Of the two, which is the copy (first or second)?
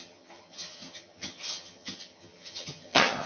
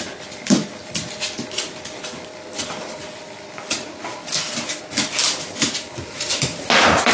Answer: first